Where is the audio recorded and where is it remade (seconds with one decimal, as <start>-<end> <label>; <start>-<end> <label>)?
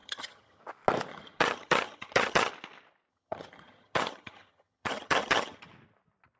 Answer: 0.0-0.6 remade; 0.6-1.1 recorded; 1.1-2.5 remade; 2.5-3.1 recorded; 3.1-5.7 remade; 5.7-6.4 recorded